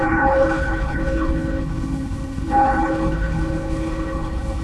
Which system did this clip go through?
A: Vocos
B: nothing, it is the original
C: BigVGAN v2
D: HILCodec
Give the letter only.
D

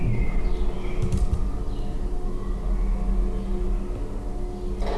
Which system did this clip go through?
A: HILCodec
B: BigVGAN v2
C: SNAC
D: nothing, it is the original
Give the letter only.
D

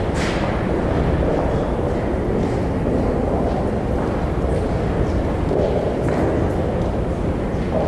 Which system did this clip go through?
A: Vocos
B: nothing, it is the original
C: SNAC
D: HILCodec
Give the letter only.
B